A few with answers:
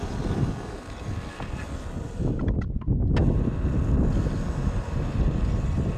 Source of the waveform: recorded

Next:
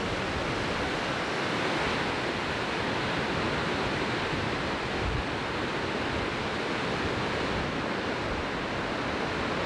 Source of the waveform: recorded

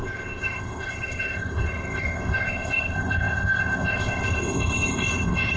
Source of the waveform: remade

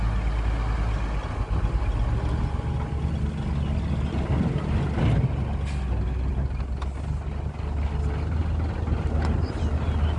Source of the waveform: recorded